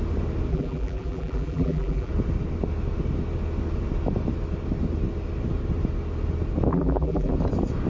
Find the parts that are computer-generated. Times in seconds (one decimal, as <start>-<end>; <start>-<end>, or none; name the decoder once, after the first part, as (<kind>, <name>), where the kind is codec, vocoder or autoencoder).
0.5-2.1 (vocoder, BigVGAN v2); 6.7-7.3